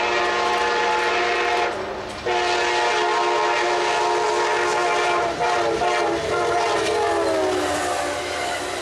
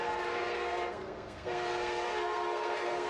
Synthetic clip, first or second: second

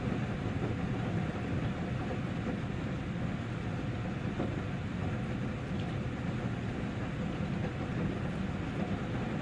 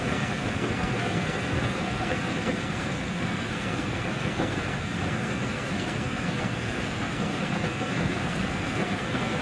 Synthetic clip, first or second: second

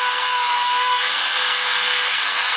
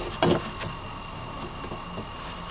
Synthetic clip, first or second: first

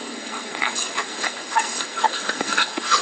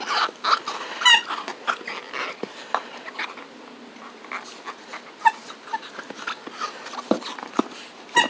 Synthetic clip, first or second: first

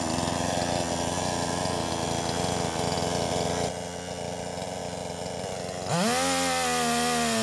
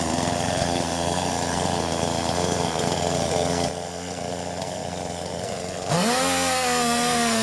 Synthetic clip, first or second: second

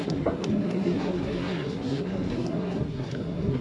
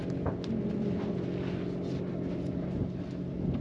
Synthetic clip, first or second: first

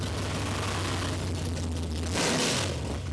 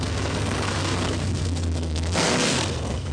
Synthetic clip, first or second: second